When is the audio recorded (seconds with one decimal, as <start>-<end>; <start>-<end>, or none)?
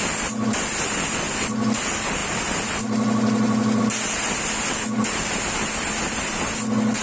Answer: 0.0-7.0